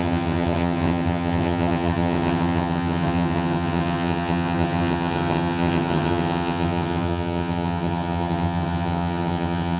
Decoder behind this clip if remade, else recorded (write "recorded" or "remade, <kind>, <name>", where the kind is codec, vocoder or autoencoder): remade, vocoder, HiFi-GAN